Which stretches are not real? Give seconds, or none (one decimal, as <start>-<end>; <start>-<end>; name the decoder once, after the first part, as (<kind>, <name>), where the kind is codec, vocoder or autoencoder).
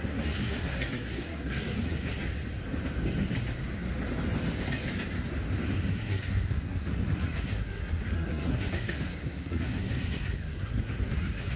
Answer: 0.0-2.2 (codec, SNAC); 5.9-11.6